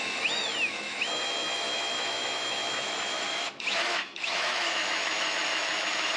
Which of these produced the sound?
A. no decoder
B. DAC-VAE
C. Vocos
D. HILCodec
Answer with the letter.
B